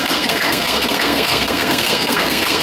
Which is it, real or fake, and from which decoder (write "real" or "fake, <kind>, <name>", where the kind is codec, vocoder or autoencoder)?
fake, codec, SNAC